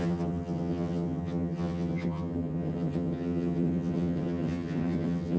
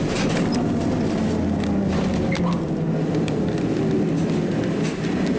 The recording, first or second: second